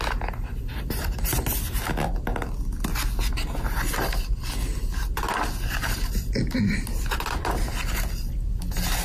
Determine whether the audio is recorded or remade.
recorded